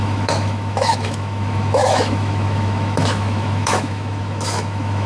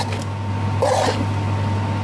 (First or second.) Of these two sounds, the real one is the second